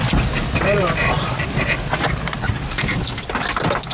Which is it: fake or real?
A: real